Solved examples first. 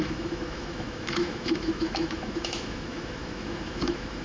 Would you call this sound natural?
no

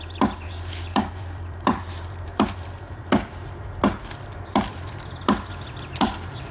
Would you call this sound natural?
no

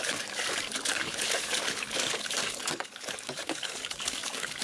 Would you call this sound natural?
no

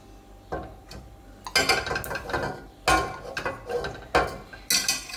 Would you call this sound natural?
yes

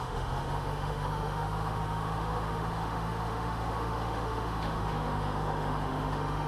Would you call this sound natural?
no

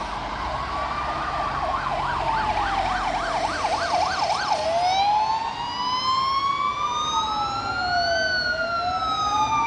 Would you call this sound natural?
yes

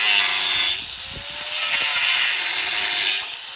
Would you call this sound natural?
yes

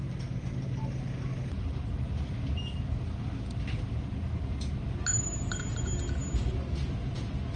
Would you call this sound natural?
yes